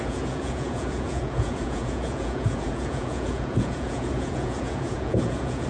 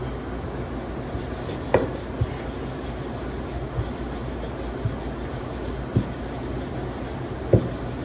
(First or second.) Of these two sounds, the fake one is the first